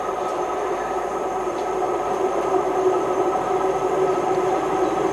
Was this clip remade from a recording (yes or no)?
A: yes